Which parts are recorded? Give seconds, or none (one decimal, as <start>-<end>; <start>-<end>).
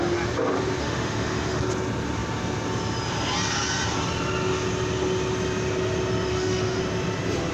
0.0-0.8; 1.6-6.3; 6.8-7.5